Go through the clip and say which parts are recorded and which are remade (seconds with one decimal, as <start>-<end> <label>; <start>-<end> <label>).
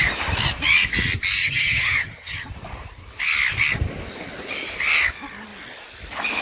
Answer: 0.0-1.4 recorded; 1.4-2.5 remade; 2.5-6.4 recorded